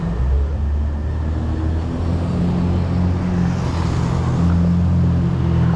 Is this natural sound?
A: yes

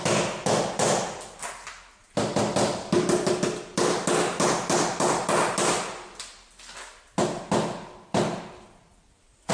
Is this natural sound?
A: yes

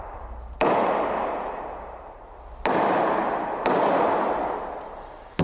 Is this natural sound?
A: yes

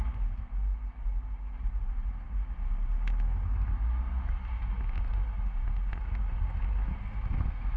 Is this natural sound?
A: yes